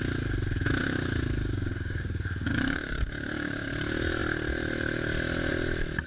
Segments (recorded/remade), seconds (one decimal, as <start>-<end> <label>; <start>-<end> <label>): 0.0-0.8 recorded; 0.8-3.7 remade; 3.7-6.1 recorded